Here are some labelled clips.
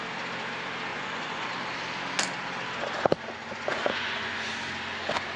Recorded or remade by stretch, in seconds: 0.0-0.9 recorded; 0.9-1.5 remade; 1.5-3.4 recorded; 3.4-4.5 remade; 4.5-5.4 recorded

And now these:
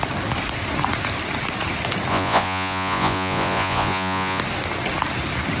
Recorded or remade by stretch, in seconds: 0.0-2.1 recorded; 2.1-4.4 remade; 4.4-5.6 recorded

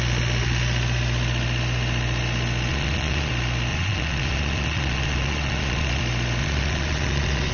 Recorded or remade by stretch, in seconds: 0.0-2.7 recorded; 2.7-3.3 remade; 3.3-3.7 recorded; 3.7-6.0 remade; 6.0-6.4 recorded; 6.4-7.5 remade

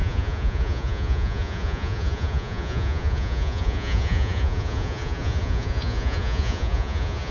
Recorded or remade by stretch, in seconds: 0.0-7.3 remade

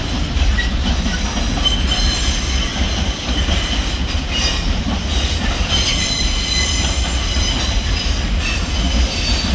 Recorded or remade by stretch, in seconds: 0.0-9.5 recorded

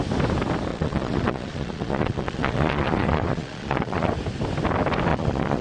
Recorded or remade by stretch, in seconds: 0.0-0.7 recorded; 0.7-4.1 remade; 4.1-5.1 recorded; 5.1-5.6 remade

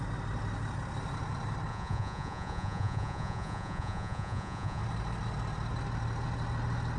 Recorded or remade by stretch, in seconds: 0.0-1.7 recorded; 1.7-4.8 remade; 4.8-7.0 recorded